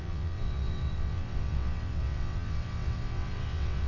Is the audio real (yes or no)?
no